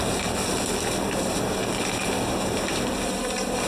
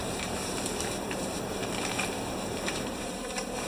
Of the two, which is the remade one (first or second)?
second